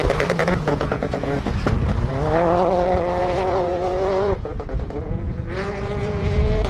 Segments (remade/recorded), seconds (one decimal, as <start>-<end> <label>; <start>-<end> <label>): 0.0-0.4 recorded; 0.4-1.4 remade; 1.4-3.2 recorded; 3.2-6.7 remade